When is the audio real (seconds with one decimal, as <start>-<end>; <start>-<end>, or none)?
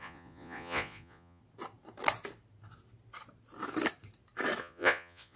1.4-4.6